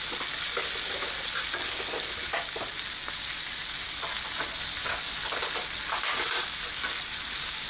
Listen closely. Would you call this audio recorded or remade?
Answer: recorded